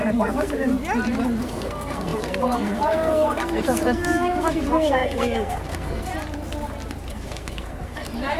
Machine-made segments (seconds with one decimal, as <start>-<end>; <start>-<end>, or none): 0.0-0.7; 1.4-6.1; 7.1-8.4